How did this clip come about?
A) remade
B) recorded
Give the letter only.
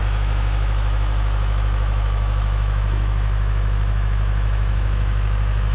A